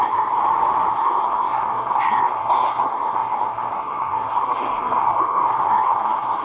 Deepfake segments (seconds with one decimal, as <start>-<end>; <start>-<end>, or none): 0.0-0.4; 0.9-6.4